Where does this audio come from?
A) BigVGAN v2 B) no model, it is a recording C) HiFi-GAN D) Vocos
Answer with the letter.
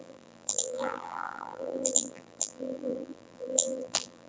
A